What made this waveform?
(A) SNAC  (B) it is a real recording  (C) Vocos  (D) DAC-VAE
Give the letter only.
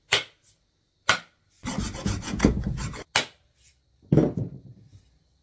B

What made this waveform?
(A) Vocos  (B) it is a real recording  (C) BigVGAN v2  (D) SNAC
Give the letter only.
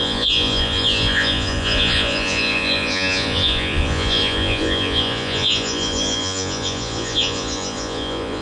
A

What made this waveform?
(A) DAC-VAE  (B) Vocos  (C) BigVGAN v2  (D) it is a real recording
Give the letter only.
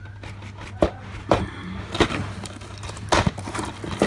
D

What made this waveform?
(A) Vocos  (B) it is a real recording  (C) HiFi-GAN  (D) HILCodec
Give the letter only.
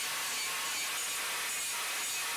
B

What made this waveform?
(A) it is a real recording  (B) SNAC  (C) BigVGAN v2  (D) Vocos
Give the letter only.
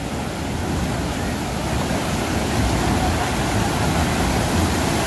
A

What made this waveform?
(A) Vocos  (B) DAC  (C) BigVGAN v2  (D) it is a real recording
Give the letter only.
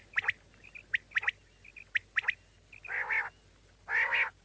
D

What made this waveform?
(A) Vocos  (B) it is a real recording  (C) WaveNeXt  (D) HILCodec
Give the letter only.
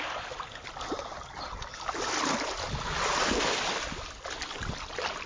B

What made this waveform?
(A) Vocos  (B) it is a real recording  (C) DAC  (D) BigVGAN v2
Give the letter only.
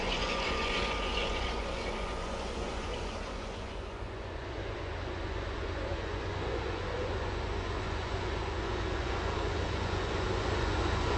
A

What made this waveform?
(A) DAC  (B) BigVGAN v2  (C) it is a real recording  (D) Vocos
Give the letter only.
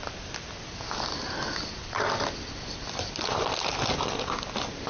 C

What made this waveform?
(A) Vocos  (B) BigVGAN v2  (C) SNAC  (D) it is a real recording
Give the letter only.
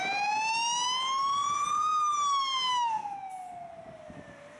D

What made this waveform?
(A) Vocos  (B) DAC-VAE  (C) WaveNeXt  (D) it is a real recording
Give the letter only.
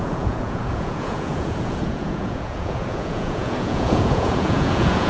A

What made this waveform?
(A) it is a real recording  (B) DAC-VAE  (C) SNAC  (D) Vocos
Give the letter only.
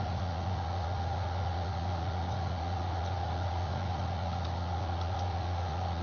D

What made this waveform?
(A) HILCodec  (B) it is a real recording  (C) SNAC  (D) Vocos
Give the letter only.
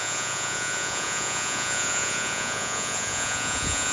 D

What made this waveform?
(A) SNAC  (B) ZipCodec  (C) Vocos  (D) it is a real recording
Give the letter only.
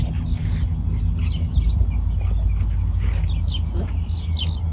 D